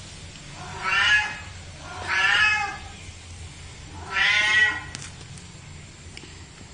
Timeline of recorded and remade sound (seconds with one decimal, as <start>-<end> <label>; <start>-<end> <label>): 0.0-0.7 recorded; 0.7-3.1 remade; 3.1-6.7 recorded